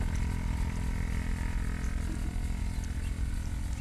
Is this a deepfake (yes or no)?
no